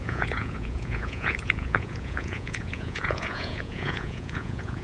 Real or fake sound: fake